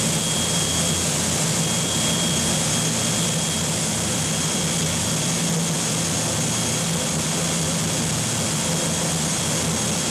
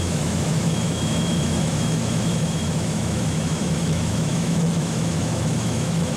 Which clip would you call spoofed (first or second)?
second